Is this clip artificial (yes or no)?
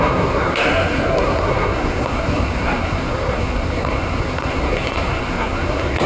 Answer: yes